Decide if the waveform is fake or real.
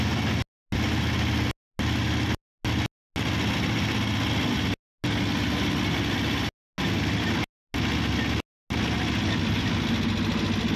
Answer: real